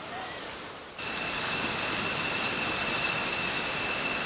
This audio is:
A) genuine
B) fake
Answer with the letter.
A